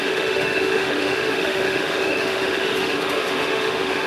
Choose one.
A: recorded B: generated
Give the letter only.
B